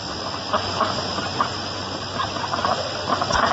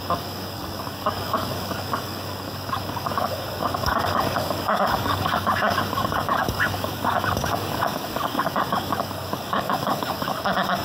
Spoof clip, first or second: second